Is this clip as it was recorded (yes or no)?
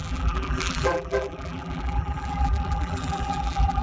no